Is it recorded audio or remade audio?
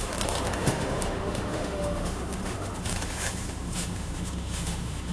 remade